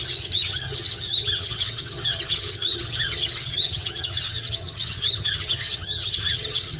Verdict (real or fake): fake